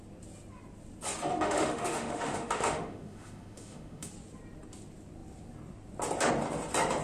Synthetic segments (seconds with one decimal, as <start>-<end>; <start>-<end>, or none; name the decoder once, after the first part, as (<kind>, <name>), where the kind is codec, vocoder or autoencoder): 1.3-4.1 (autoencoder, DAC-VAE)